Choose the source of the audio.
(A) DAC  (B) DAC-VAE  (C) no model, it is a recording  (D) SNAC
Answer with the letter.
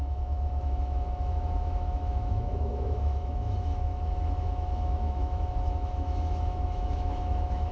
B